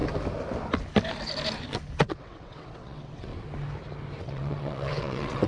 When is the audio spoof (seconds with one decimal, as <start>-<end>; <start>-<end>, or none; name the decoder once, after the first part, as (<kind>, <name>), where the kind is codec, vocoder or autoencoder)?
2.0-3.3 (vocoder, WaveNeXt); 4.2-5.5